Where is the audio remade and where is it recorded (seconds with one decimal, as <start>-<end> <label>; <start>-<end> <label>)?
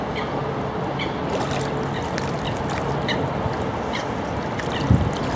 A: 0.0-5.4 recorded